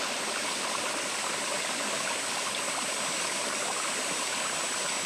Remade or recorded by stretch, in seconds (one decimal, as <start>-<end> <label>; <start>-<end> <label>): 0.0-5.1 recorded